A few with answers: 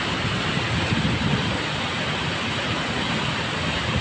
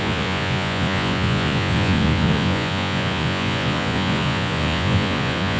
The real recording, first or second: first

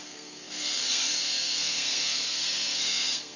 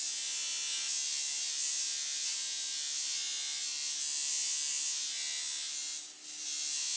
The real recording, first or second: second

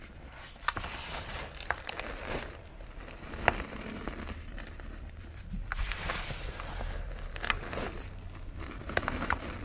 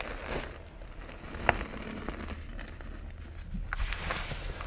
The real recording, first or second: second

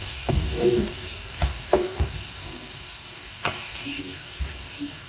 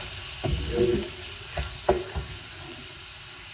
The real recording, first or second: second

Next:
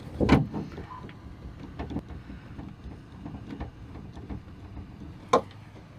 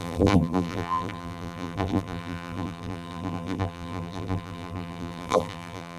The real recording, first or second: first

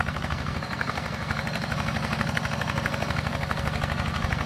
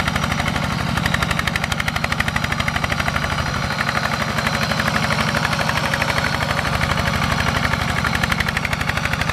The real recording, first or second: second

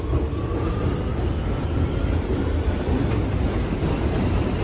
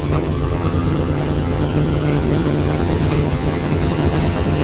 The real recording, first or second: first